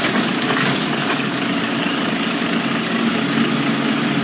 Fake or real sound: fake